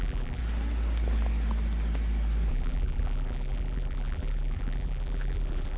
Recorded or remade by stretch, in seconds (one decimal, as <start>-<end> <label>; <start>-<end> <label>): 0.0-0.4 remade; 0.4-2.5 recorded; 2.5-5.8 remade